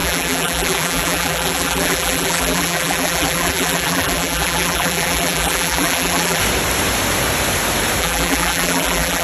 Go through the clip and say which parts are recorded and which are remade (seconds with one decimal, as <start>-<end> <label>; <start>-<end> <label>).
0.0-6.4 remade; 6.4-8.0 recorded; 8.0-9.2 remade